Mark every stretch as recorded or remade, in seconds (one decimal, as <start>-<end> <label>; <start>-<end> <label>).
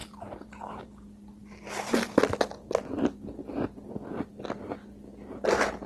0.0-0.9 remade; 0.9-5.9 recorded